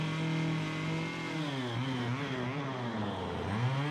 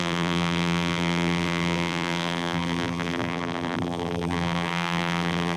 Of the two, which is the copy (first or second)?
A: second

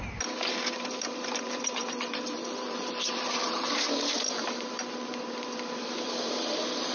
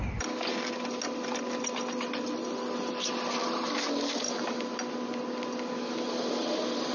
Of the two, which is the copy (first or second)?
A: first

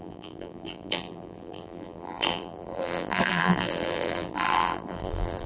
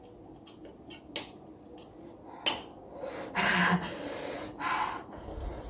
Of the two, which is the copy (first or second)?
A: first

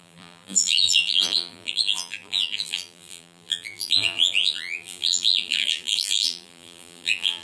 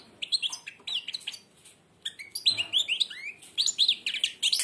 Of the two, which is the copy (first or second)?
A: first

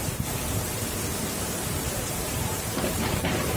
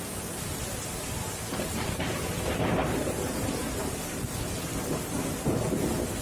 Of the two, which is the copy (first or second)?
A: first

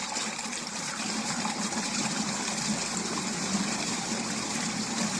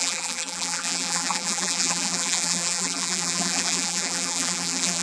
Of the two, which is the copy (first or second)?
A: second